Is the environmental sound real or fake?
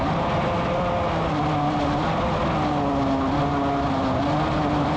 real